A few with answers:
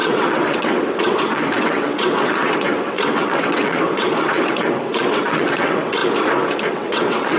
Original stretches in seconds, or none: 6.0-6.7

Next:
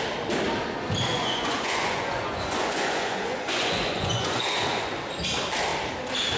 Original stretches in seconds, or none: 0.0-1.1; 4.9-6.4

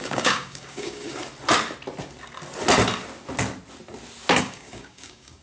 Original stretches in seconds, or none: 1.2-4.4

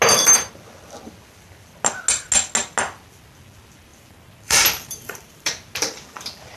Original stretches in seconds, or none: 0.0-3.9

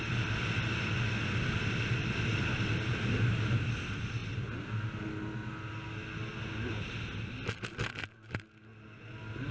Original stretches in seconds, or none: 0.0-9.5

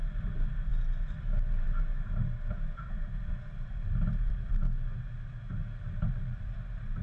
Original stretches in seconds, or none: 0.0-5.6; 6.6-7.0

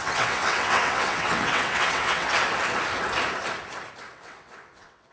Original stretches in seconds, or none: 2.4-4.1